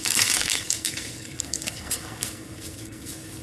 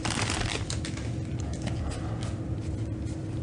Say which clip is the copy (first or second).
first